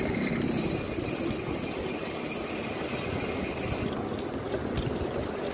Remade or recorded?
recorded